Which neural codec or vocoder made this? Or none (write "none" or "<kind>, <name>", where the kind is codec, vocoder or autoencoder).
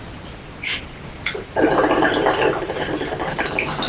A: none